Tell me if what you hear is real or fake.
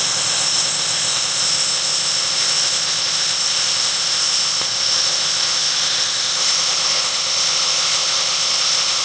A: fake